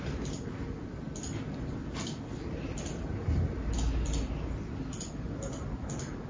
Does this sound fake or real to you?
real